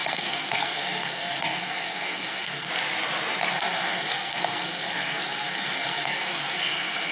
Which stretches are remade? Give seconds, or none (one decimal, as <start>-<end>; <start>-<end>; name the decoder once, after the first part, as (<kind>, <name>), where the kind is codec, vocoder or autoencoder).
0.0-2.7 (codec, SNAC); 3.5-7.1